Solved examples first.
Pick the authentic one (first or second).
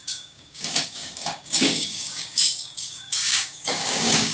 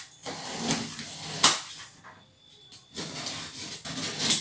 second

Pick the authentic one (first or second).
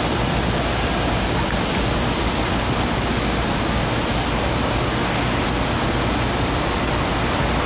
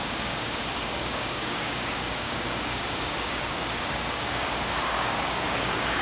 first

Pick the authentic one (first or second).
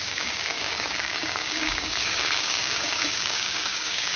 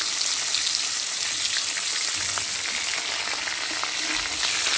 second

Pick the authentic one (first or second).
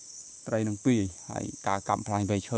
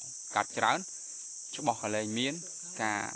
second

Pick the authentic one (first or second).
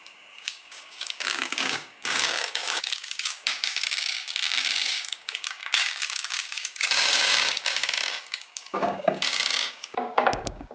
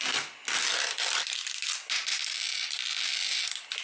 second